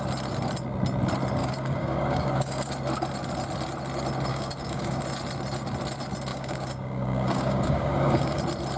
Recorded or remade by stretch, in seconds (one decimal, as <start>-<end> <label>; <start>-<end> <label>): 0.0-1.4 recorded; 1.4-2.7 remade; 2.7-4.3 recorded; 4.3-5.0 remade; 5.0-6.3 recorded; 6.3-8.4 remade; 8.4-8.8 recorded